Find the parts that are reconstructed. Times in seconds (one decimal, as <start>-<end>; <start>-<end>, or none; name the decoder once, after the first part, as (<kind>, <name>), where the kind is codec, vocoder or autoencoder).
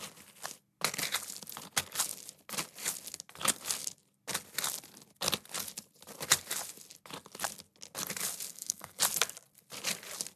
8.5-9.0 (codec, SNAC)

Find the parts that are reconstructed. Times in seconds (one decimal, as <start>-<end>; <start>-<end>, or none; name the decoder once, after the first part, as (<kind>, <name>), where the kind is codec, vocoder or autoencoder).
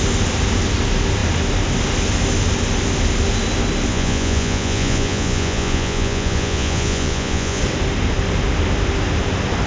3.9-7.6 (vocoder, Vocos)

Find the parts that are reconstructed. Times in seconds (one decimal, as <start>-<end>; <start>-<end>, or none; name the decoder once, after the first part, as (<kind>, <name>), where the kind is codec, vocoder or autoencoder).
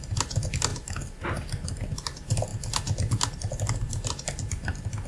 none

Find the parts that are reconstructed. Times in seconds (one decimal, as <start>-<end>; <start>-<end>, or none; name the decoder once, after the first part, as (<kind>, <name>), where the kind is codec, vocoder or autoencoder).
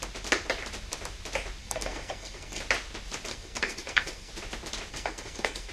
1.6-2.6 (codec, SNAC); 3.3-4.3; 4.9-5.7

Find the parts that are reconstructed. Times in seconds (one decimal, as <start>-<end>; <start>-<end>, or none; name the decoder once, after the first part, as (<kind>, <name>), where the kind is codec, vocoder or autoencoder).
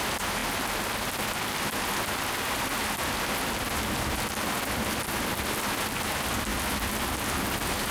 none